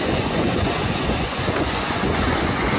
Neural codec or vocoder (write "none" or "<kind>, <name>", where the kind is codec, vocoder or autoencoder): vocoder, Vocos